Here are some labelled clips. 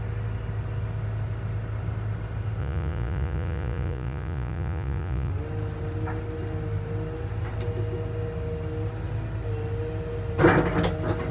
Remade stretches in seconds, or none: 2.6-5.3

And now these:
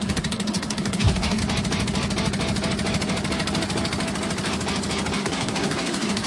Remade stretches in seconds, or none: 0.0-1.4; 5.2-6.3

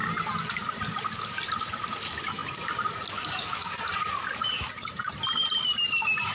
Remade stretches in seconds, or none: none